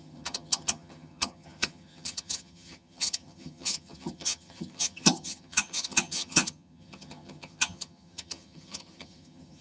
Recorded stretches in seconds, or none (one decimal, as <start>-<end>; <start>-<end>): none